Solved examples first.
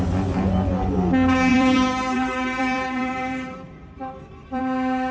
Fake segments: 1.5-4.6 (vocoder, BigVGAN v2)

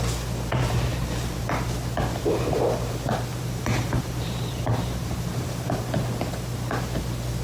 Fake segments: 0.9-1.4 (vocoder, BigVGAN v2); 3.3-5.8